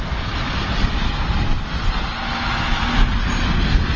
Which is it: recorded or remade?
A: recorded